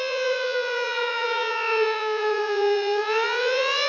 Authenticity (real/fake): fake